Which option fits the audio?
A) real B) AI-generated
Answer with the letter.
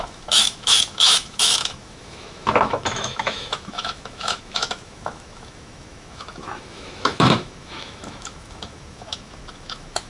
B